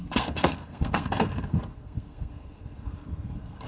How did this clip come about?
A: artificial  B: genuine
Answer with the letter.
A